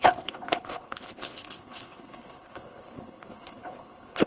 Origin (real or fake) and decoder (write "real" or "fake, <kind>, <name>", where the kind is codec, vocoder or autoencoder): fake, codec, HILCodec